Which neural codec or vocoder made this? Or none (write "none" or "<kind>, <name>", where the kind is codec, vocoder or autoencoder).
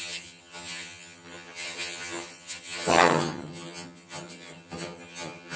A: vocoder, HiFi-GAN